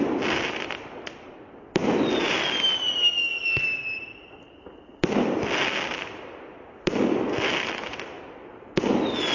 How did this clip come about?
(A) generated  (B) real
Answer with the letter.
B